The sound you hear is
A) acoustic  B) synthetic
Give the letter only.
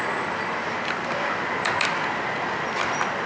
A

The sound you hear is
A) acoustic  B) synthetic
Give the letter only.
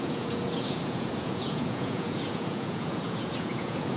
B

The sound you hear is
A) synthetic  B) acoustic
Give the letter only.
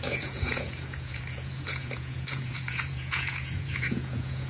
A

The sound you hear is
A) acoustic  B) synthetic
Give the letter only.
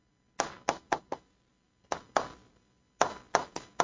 A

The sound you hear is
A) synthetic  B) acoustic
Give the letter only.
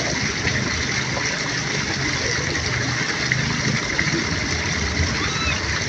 B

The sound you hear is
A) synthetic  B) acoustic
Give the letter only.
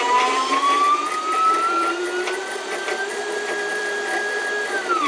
A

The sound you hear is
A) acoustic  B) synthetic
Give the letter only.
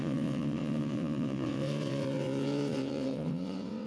B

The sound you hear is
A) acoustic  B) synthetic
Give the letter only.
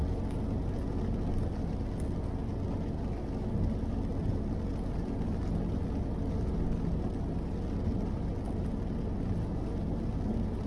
A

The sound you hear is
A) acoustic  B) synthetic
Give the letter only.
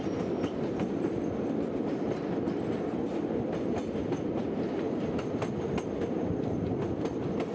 A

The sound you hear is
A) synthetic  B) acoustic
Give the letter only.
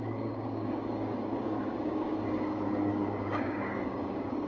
A